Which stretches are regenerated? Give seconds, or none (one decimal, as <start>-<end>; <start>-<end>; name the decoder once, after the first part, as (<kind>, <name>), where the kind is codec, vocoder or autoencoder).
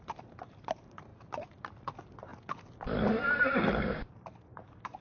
0.0-2.3 (vocoder, BigVGAN v2); 3.4-5.0